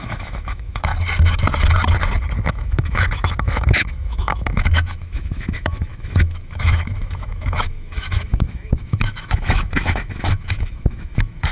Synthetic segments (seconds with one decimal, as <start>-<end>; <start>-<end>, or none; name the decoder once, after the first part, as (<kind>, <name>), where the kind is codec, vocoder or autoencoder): 0.0-0.9 (autoencoder, DAC-VAE); 2.5-11.5